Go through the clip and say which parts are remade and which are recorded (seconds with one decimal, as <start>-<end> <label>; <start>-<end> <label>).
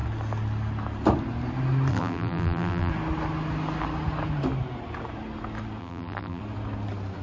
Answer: 0.0-1.9 recorded; 1.9-2.9 remade; 2.9-5.8 recorded; 5.8-6.4 remade; 6.4-7.2 recorded